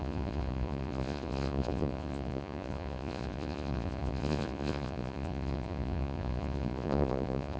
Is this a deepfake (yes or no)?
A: yes